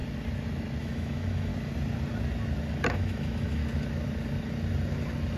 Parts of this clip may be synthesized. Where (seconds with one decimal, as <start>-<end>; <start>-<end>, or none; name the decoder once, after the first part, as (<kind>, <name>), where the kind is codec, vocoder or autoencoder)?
0.8-1.5 (autoencoder, DAC-VAE); 2.9-3.6